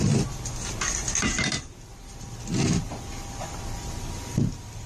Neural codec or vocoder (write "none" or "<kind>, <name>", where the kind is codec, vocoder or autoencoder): none